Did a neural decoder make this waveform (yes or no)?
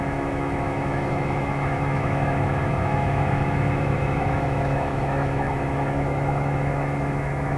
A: yes